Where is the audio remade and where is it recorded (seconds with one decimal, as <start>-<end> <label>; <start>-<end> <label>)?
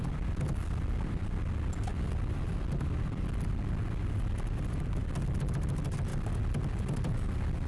0.0-7.7 recorded